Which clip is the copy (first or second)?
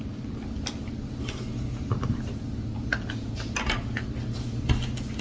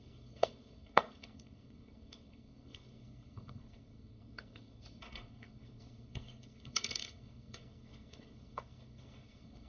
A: second